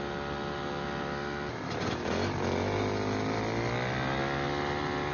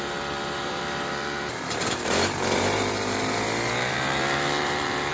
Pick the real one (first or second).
first